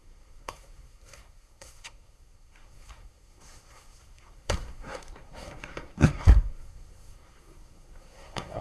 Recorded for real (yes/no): no